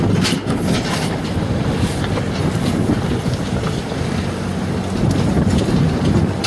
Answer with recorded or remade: recorded